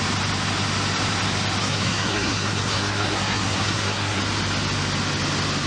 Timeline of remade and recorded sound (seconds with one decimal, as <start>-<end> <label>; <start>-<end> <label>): 0.0-1.6 recorded; 1.6-4.2 remade; 4.2-5.7 recorded